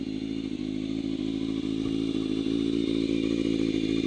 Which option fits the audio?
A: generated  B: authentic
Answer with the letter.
B